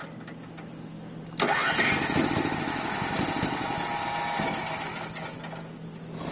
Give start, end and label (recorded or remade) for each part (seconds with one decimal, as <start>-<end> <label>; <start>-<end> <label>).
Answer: 0.0-6.3 recorded